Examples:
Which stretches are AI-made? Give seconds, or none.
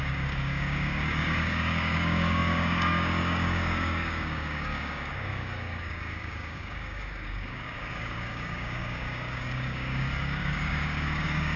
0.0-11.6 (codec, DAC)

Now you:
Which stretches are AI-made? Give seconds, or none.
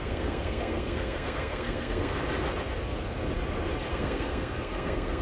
0.0-2.2 (codec, SNAC); 3.9-5.2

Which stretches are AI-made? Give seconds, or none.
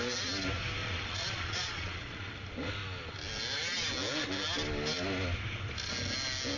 0.8-2.3 (vocoder, Vocos)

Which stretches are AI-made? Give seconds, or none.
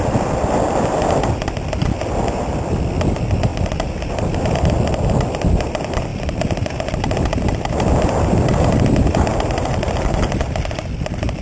none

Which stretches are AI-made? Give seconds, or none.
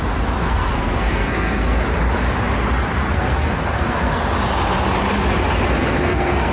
0.4-1.8 (codec, SNAC); 3.1-4.2; 5.8-6.5